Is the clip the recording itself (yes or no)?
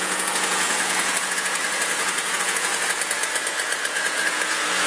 no